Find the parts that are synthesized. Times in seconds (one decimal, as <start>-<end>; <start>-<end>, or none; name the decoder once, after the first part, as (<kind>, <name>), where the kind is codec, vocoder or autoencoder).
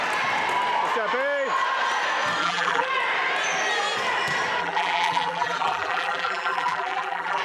2.4-2.9 (vocoder, BigVGAN v2); 4.6-7.4